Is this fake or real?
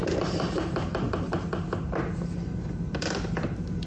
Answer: fake